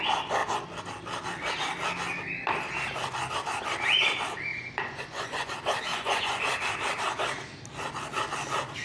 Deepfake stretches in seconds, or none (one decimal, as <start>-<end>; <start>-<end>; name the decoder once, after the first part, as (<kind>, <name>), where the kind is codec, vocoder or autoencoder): 4.5-5.5 (vocoder, Vocos); 5.9-6.4